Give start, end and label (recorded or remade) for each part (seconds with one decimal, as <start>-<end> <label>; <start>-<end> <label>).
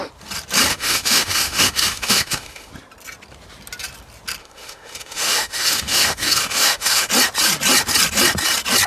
0.0-0.7 recorded; 0.7-2.7 remade; 2.7-4.4 recorded; 4.4-7.1 remade; 7.1-8.9 recorded